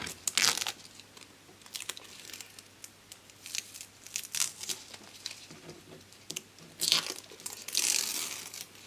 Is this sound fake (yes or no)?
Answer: no